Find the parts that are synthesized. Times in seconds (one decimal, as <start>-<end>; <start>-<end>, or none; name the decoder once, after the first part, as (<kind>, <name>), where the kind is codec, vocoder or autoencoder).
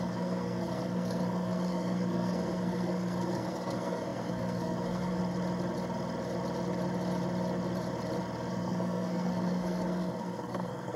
0.0-5.2 (codec, SNAC); 8.5-11.0